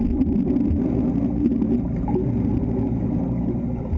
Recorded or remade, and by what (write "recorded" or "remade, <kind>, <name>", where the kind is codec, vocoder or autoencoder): recorded